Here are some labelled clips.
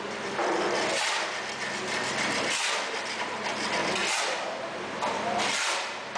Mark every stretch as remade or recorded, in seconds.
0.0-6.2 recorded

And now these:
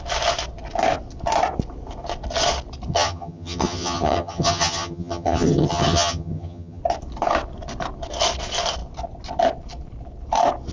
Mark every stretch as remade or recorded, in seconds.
0.0-2.9 recorded; 2.9-6.8 remade; 6.8-10.7 recorded